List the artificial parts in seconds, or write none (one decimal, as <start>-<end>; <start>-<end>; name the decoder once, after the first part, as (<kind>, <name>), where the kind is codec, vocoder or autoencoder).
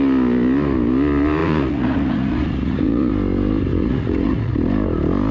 1.4-3.1 (vocoder, Vocos); 3.7-4.5